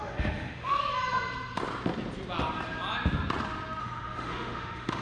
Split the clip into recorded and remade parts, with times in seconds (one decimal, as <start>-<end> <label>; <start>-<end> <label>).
0.0-0.8 remade; 0.8-3.8 recorded; 3.8-5.0 remade